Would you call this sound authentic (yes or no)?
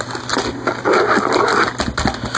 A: yes